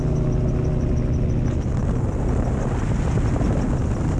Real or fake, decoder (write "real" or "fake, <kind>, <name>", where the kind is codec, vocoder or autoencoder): real